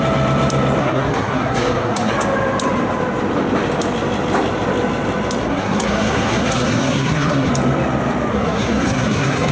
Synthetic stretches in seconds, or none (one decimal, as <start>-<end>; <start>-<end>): 0.8-2.1; 5.4-7.5; 8.3-9.5

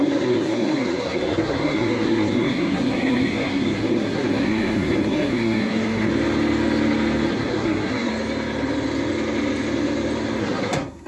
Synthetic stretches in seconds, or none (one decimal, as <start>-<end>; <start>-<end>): 0.0-6.1; 7.3-8.1; 10.4-11.1